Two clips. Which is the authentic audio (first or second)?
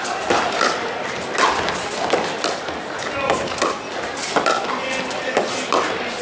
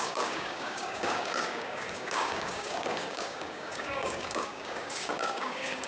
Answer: first